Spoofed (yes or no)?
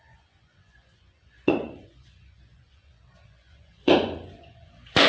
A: yes